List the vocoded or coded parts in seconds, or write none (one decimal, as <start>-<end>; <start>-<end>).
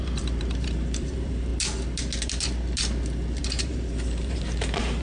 0.0-1.5; 3.4-5.0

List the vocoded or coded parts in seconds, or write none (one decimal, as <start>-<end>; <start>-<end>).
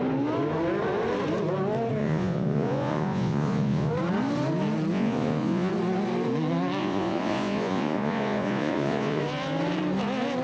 2.0-3.9; 4.9-5.7; 6.8-9.2